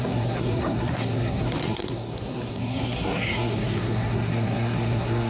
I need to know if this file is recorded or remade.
remade